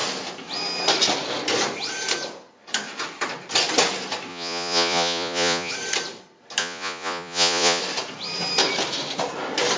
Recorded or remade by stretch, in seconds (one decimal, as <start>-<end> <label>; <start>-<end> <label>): 0.0-4.3 recorded; 4.3-5.7 remade; 5.7-6.6 recorded; 6.6-7.8 remade; 7.8-9.8 recorded